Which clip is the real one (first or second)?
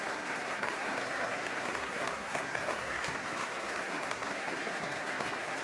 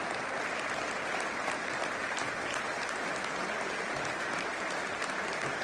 second